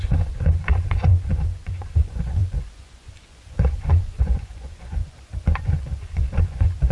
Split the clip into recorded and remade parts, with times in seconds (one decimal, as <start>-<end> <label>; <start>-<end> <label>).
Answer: 0.0-6.9 remade